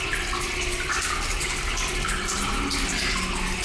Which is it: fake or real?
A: real